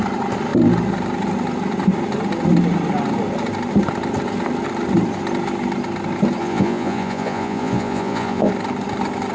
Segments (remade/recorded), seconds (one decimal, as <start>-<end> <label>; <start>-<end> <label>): 0.0-6.4 recorded; 6.4-8.5 remade; 8.5-9.3 recorded

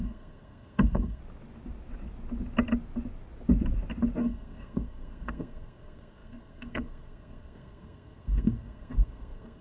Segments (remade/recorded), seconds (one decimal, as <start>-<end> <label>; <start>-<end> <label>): 0.0-1.2 remade; 1.2-4.2 recorded; 4.2-9.6 remade

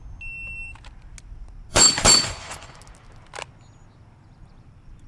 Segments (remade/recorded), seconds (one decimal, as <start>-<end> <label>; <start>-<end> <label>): 0.0-1.7 recorded; 1.7-2.8 remade; 2.8-5.1 recorded

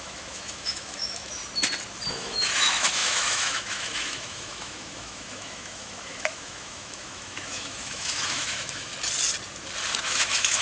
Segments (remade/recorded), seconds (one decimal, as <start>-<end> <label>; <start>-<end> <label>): 0.0-1.4 remade; 1.4-2.1 recorded; 2.1-8.9 remade; 8.9-10.0 recorded; 10.0-10.6 remade

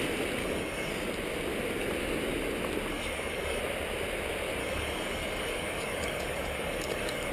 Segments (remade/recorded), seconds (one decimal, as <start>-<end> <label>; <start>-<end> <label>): 0.0-0.4 recorded; 0.4-0.9 remade; 0.9-2.9 recorded; 2.9-3.6 remade; 3.6-4.6 recorded; 4.6-7.3 remade

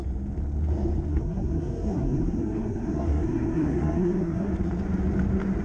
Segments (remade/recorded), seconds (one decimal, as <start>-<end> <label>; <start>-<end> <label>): 0.0-1.1 recorded; 1.1-4.5 remade; 4.5-5.6 recorded

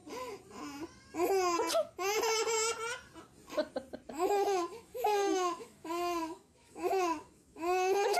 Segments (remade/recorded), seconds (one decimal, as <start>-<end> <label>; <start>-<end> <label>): 0.0-4.1 recorded; 4.1-8.2 remade